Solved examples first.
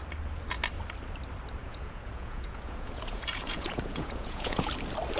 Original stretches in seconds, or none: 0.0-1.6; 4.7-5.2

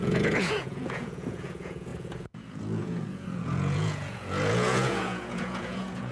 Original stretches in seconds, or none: none

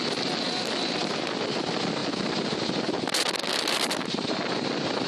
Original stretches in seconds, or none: 0.0-5.1

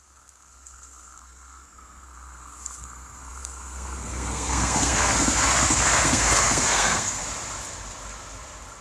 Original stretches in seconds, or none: 7.2-8.8

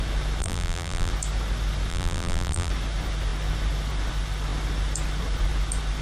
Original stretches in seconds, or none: 0.0-0.4; 1.1-1.9; 2.7-6.0

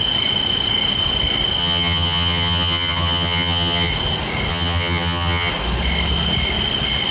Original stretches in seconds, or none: 0.0-1.6; 3.9-4.5; 5.5-7.1

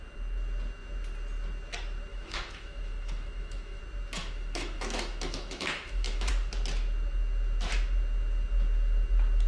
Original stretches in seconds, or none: 0.0-2.1; 3.8-4.2; 6.3-9.5

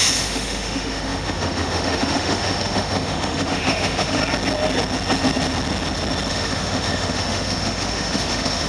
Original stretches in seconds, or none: 4.2-6.3